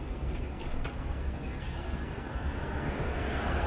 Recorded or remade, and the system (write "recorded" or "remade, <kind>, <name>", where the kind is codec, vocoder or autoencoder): remade, codec, SNAC